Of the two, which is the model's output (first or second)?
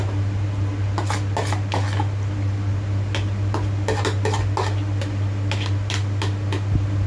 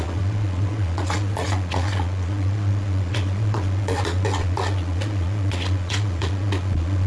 second